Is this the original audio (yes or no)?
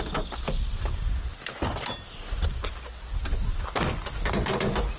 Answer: yes